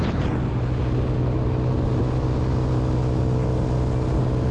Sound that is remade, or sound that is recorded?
recorded